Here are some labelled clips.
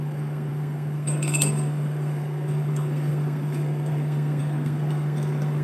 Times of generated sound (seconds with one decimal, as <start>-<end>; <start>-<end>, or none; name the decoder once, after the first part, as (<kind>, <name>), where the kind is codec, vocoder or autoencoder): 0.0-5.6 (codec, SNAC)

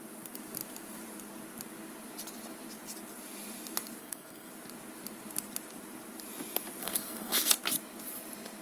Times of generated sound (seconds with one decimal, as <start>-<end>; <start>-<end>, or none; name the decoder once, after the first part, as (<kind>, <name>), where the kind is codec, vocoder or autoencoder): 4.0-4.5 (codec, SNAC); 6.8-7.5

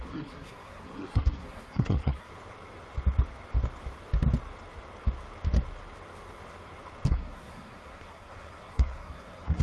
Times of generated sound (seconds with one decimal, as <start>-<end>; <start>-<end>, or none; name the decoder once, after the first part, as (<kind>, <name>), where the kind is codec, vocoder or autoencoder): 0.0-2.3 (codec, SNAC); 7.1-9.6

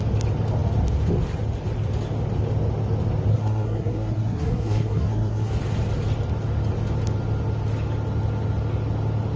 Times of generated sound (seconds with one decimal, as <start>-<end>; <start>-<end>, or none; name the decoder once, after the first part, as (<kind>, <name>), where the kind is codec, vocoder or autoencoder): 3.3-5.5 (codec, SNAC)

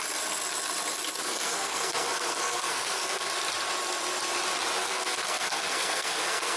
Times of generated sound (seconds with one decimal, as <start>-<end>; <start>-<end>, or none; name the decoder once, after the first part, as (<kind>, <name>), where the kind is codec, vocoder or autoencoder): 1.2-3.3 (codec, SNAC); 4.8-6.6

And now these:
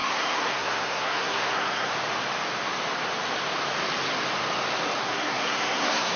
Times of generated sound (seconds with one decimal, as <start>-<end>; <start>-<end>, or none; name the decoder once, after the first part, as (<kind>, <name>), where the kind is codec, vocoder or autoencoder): 0.0-1.9 (codec, SNAC); 5.0-6.2